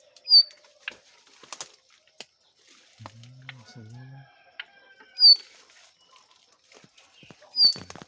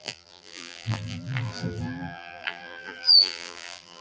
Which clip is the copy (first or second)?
second